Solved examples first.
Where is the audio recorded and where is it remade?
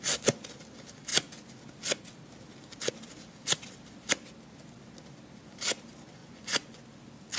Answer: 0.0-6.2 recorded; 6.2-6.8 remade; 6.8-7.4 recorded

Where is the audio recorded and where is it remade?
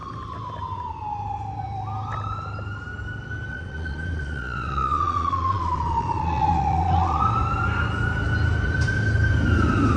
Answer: 0.0-3.5 recorded; 3.5-7.2 remade; 7.2-10.0 recorded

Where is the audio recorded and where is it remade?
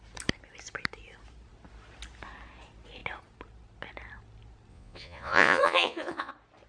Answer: 0.0-4.7 recorded; 4.7-6.3 remade; 6.3-6.7 recorded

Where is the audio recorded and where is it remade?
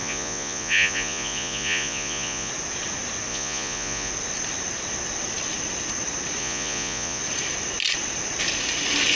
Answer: 0.0-2.5 remade; 2.5-3.3 recorded; 3.3-4.1 remade; 4.1-6.4 recorded; 6.4-7.2 remade; 7.2-9.1 recorded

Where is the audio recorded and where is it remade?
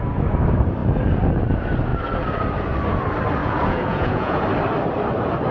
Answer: 0.0-3.4 recorded; 3.4-4.4 remade; 4.4-5.5 recorded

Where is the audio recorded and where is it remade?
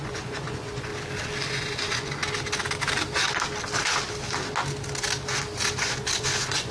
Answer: 0.0-0.9 remade; 0.9-1.5 recorded; 1.5-2.2 remade; 2.2-5.8 recorded; 5.8-6.7 remade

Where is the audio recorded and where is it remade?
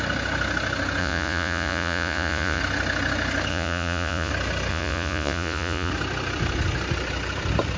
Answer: 0.0-1.0 recorded; 1.0-2.6 remade; 2.6-3.5 recorded; 3.5-4.3 remade; 4.3-4.7 recorded; 4.7-5.9 remade; 5.9-7.8 recorded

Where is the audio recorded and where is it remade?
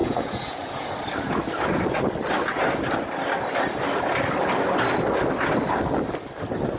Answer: 0.0-0.9 remade; 0.9-6.8 recorded